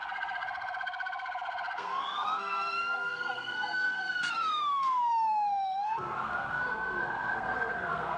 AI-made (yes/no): yes